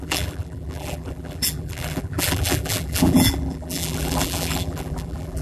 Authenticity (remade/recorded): remade